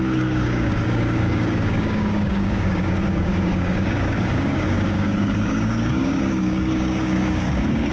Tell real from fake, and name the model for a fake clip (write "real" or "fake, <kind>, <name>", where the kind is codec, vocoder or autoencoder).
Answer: fake, codec, DAC